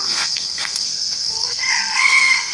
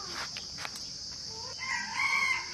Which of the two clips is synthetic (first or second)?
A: first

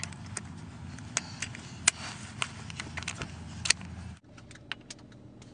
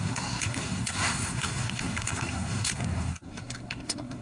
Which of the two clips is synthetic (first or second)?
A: second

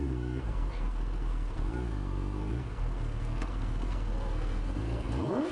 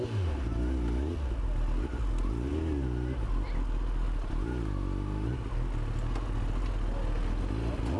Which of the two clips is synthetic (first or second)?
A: first